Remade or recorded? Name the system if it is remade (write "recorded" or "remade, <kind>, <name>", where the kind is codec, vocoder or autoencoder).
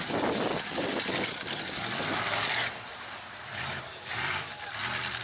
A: remade, vocoder, BigVGAN v2